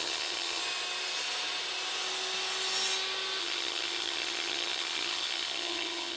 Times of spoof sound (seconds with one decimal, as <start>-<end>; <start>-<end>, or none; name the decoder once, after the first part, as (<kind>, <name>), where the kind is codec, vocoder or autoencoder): 0.0-0.6 (vocoder, HiFi-GAN); 3.4-6.2